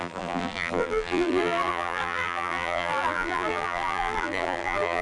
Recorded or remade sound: remade